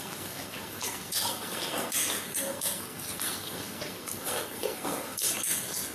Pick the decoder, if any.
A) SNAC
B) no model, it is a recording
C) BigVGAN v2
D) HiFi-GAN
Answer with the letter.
A